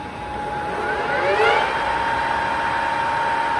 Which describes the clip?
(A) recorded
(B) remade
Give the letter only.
A